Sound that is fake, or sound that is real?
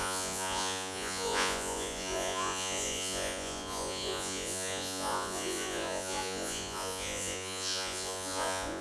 fake